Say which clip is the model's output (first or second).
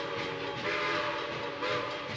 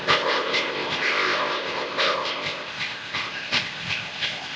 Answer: second